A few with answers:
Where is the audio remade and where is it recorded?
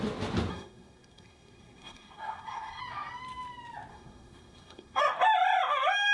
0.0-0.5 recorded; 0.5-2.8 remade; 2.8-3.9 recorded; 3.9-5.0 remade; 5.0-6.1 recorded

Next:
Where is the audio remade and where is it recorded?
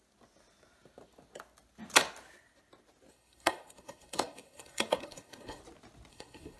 0.0-3.1 recorded; 3.1-5.6 remade; 5.6-6.1 recorded; 6.1-6.6 remade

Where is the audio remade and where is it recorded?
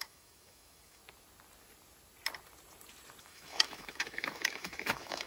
0.0-1.0 remade; 1.0-3.2 recorded; 3.2-5.3 remade